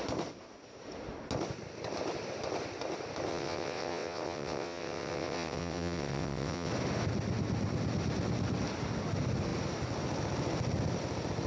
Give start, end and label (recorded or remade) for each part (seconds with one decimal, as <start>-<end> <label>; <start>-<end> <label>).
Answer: 0.0-3.3 recorded; 3.3-6.7 remade; 6.7-11.5 recorded